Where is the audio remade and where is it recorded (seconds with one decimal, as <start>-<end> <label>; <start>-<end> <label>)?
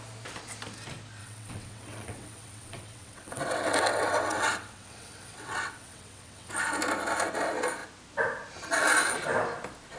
0.0-1.2 recorded; 1.2-6.5 remade; 6.5-10.0 recorded